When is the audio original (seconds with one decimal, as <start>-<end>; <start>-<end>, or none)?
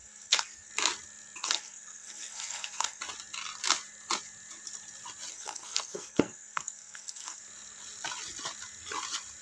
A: 0.7-1.4; 3.0-5.3; 7.4-9.4